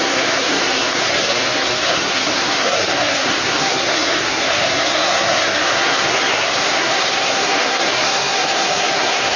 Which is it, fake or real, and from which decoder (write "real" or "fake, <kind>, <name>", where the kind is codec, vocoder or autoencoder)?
fake, codec, SNAC